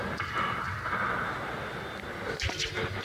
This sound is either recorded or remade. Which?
recorded